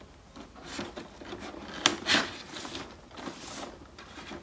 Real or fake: real